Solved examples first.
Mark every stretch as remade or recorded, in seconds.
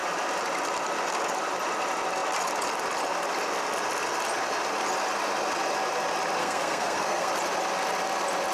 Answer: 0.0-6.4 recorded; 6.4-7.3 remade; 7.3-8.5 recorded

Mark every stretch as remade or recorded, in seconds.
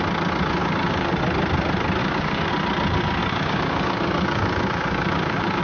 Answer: 0.0-0.6 recorded; 0.6-1.2 remade; 1.2-2.0 recorded; 2.0-2.5 remade; 2.5-3.2 recorded; 3.2-5.6 remade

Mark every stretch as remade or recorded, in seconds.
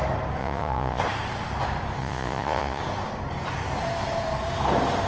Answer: 0.0-0.4 recorded; 0.4-1.0 remade; 1.0-2.0 recorded; 2.0-2.8 remade; 2.8-5.1 recorded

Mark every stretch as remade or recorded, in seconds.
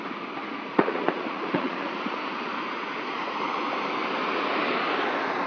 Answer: 0.0-0.4 recorded; 0.4-3.7 remade; 3.7-5.5 recorded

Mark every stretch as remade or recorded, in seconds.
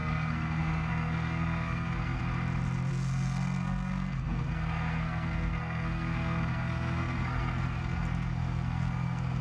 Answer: 0.0-2.2 remade; 2.2-2.9 recorded; 2.9-9.4 remade